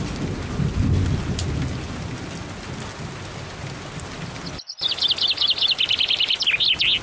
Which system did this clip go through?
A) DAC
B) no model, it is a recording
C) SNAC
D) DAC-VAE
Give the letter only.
B